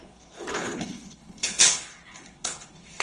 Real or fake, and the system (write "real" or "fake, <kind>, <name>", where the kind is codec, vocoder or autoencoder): fake, codec, HILCodec